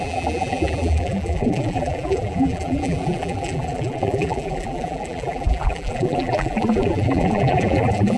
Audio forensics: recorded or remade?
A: remade